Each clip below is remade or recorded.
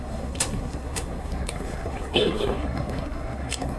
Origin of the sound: remade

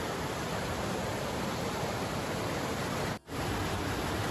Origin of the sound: recorded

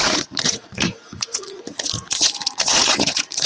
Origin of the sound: remade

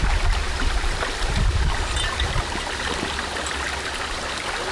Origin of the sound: recorded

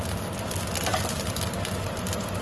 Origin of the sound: recorded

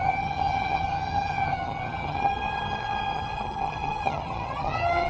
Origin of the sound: remade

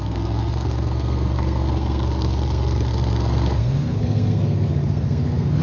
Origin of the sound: remade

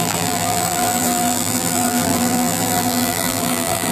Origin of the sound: remade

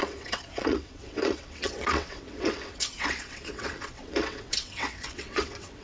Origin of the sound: remade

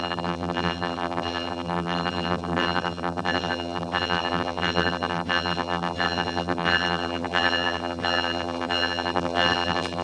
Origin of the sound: remade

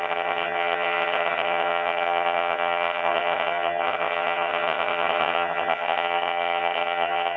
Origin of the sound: remade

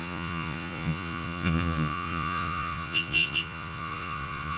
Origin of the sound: remade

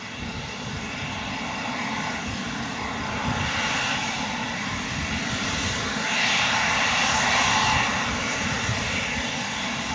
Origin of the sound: recorded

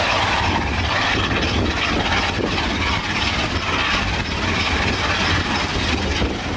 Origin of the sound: recorded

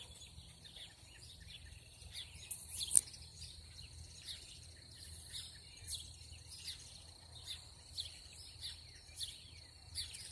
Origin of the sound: remade